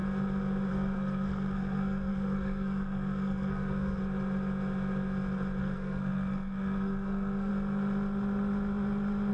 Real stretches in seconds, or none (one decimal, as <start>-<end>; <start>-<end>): 0.0-0.7; 4.0-5.6; 7.5-9.3